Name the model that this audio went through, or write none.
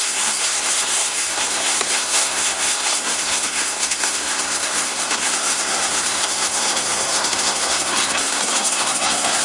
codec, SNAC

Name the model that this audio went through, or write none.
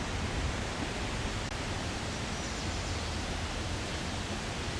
none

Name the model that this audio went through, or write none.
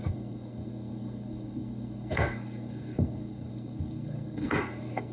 codec, SNAC